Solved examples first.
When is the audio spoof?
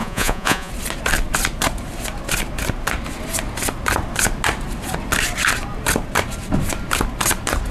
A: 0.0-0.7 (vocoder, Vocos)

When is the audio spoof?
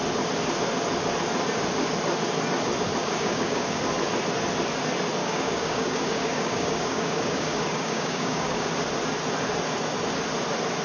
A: 3.0-3.8 (codec, DAC); 5.2-8.7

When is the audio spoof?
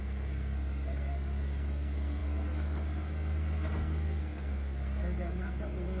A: 0.0-6.0 (codec, SNAC)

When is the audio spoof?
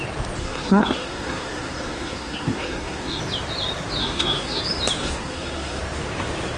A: 0.4-3.2 (codec, SNAC); 4.0-4.6; 5.0-5.8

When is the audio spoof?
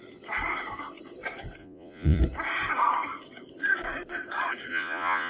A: 1.6-2.2 (vocoder, Vocos); 4.7-5.3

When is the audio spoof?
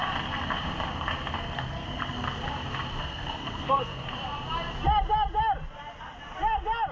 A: 1.3-2.4 (codec, SNAC); 3.0-4.1